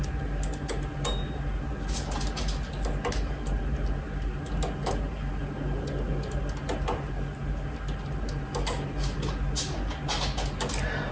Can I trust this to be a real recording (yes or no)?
yes